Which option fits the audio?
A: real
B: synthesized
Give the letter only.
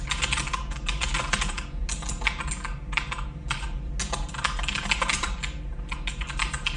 A